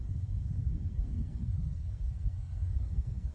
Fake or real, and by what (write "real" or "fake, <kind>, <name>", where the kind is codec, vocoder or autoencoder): fake, codec, SNAC